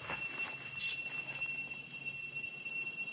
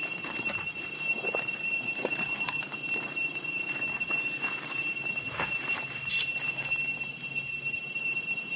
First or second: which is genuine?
first